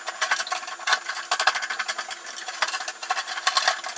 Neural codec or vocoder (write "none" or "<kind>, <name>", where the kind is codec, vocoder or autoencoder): none